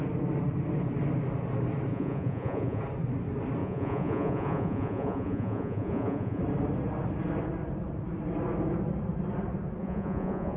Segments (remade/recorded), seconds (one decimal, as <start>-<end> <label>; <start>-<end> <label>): 0.0-1.9 recorded; 1.9-2.8 remade; 2.8-3.6 recorded; 3.6-6.4 remade; 6.4-9.8 recorded; 9.8-10.6 remade